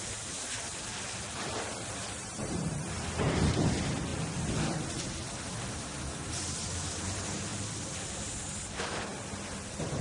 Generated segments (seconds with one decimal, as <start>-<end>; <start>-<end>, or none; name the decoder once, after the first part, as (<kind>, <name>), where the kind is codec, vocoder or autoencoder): 0.7-2.9 (vocoder, BigVGAN v2); 4.1-6.0; 7.5-8.7